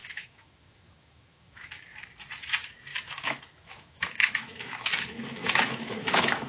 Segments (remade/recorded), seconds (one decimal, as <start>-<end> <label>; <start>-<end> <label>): 0.0-1.7 remade; 1.7-2.9 recorded; 2.9-6.5 remade